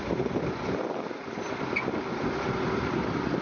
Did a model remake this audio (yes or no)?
no